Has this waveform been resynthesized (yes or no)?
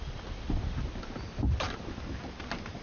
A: no